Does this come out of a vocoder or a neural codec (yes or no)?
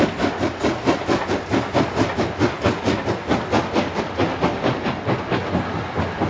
no